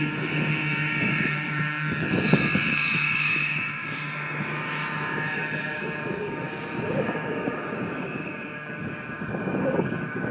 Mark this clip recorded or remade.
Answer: remade